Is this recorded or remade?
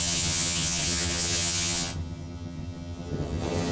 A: remade